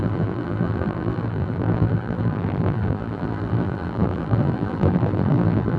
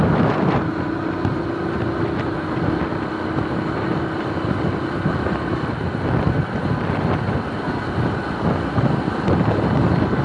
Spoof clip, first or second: first